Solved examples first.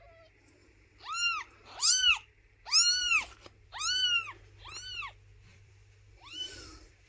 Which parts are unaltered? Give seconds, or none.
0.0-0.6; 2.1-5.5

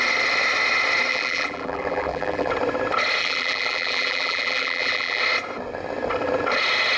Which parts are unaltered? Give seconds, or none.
0.0-1.1; 2.5-3.2; 5.2-7.0

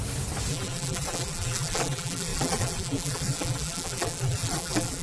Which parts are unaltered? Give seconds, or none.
0.0-0.5

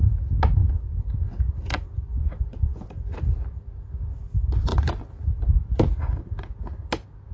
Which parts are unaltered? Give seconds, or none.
0.0-4.7; 5.5-7.3

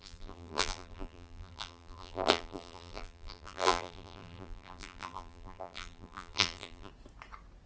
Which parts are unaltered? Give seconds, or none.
6.9-7.7

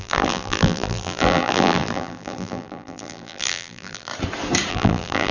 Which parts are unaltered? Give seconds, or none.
4.1-4.7

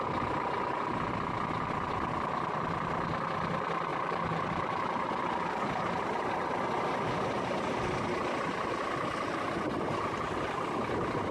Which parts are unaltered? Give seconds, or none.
0.0-3.9; 6.3-11.3

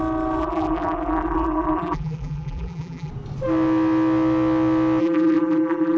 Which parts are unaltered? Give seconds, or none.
0.0-0.4; 3.1-5.0